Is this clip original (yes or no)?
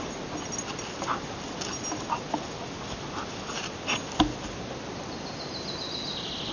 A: yes